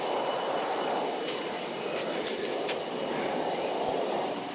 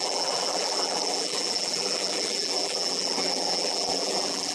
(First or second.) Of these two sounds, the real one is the first